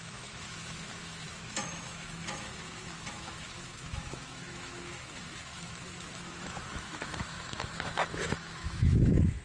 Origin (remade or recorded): remade